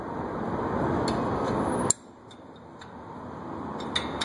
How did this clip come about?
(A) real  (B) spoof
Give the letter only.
A